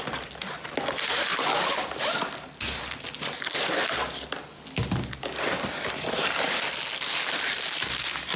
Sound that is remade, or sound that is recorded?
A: recorded